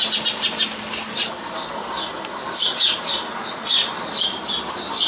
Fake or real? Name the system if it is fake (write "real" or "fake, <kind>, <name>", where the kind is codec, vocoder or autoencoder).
real